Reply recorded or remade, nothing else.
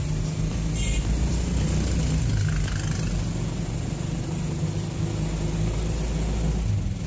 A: recorded